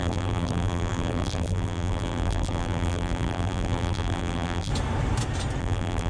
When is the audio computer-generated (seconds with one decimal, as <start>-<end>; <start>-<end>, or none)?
0.0-4.7; 5.6-6.1